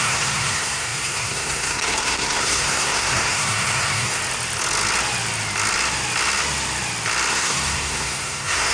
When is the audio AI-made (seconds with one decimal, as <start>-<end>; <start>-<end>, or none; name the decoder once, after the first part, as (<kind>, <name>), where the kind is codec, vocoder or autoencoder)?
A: 0.0-4.2 (codec, SNAC); 7.3-8.7